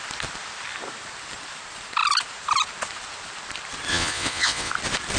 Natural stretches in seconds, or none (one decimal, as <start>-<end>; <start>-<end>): 0.0-3.9; 4.7-5.2